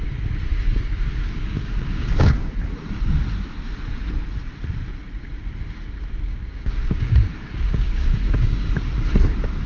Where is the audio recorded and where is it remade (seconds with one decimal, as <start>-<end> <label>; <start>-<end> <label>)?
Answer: 0.0-0.5 recorded; 0.5-2.5 remade; 2.5-6.3 recorded; 6.3-8.7 remade; 8.7-9.7 recorded